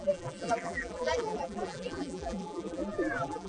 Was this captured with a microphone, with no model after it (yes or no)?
no